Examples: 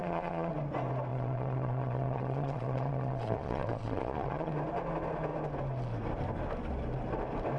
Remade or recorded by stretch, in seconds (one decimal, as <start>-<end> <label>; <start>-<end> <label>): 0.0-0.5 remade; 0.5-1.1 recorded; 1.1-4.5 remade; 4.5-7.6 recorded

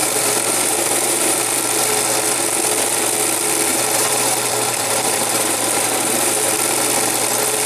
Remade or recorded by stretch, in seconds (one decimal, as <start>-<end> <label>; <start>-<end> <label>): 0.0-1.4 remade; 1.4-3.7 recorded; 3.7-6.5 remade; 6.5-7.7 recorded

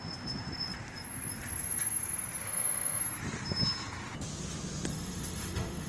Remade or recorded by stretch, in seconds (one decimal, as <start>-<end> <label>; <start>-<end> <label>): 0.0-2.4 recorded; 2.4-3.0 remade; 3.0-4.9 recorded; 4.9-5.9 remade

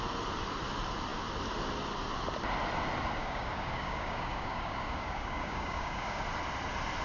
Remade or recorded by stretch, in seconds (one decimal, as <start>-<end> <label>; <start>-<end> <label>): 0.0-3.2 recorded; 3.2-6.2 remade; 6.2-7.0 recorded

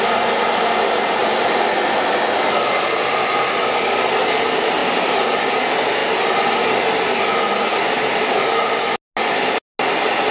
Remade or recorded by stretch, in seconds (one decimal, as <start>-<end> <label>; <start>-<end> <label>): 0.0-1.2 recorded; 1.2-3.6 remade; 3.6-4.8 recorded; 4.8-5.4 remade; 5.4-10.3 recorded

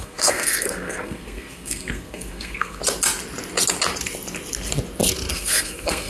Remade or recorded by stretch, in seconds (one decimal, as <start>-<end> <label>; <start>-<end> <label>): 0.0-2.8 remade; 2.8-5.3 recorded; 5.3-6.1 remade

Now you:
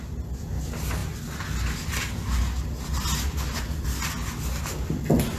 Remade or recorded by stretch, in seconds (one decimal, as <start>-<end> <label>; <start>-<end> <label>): 0.0-5.4 recorded

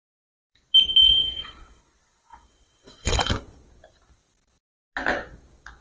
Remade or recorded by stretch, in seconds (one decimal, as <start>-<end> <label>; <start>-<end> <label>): 0.0-1.0 recorded; 1.0-1.8 remade; 1.8-2.3 recorded; 2.3-3.3 remade; 3.3-5.8 recorded